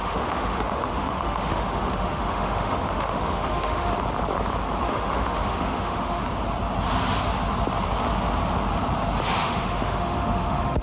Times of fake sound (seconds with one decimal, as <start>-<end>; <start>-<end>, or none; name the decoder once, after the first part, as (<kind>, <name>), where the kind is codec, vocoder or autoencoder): 0.0-3.9 (autoencoder, DAC-VAE); 4.8-6.2; 9.2-10.8